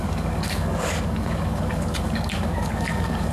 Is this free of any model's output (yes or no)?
no